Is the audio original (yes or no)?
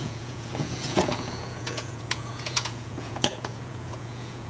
no